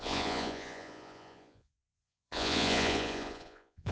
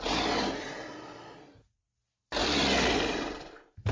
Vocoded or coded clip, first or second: first